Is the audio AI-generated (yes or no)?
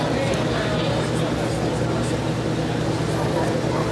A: no